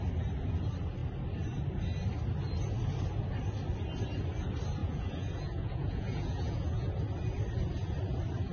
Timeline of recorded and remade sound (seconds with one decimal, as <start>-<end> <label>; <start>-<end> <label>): 0.0-4.8 recorded; 4.8-7.0 remade; 7.0-8.5 recorded